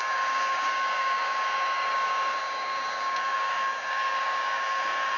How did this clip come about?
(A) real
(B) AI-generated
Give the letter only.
B